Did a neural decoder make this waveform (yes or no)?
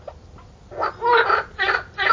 no